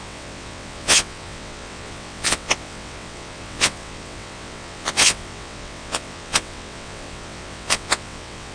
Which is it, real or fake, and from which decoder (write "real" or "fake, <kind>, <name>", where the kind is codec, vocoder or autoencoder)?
fake, vocoder, WaveNeXt